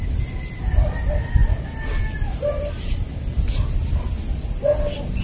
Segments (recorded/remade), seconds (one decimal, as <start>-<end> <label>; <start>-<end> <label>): 0.0-5.2 recorded

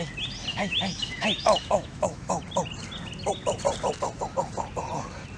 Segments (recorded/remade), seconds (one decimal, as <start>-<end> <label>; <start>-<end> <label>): 0.0-0.5 recorded; 0.5-2.4 remade; 2.4-5.4 recorded

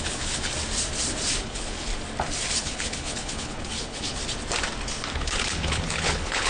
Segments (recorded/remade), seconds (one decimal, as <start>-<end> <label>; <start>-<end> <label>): 0.0-0.5 remade; 0.5-1.4 recorded; 1.4-1.9 remade; 1.9-2.6 recorded; 2.6-4.2 remade; 4.2-5.1 recorded; 5.1-6.5 remade

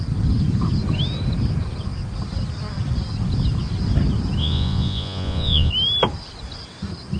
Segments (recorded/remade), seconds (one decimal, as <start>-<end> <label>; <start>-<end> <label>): 0.0-4.4 recorded; 4.4-5.7 remade; 5.7-7.2 recorded

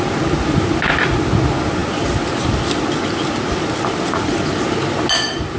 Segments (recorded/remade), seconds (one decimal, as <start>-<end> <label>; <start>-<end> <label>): 0.0-5.6 recorded